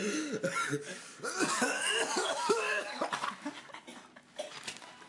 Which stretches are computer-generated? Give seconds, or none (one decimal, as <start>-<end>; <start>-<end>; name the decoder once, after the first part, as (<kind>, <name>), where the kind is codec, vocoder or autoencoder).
0.6-3.0 (codec, DAC)